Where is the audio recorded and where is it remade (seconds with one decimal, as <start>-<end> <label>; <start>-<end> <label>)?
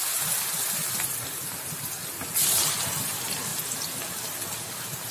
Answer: 0.0-5.1 recorded